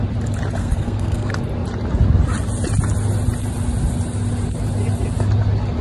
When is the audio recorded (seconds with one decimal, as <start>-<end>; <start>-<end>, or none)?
0.0-0.6; 1.3-5.8